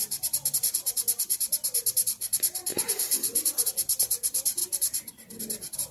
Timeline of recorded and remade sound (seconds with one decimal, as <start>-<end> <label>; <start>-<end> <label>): 0.0-2.7 recorded; 2.7-3.7 remade; 3.7-4.6 recorded; 4.6-5.4 remade; 5.4-5.9 recorded